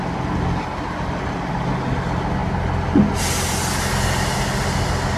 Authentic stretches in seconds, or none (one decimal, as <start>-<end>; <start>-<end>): 0.0-5.2